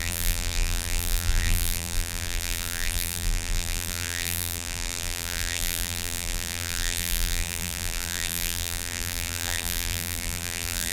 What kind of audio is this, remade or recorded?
remade